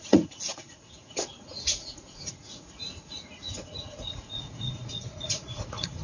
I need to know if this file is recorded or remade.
remade